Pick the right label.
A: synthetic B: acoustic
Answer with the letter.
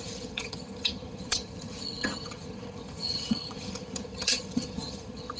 A